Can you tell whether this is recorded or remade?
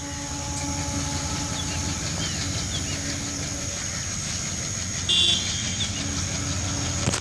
recorded